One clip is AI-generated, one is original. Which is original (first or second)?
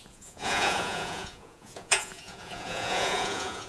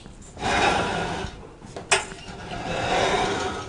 second